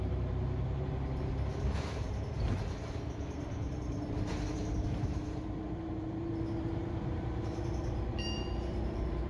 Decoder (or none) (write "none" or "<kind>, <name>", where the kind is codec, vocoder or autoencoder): vocoder, BigVGAN v2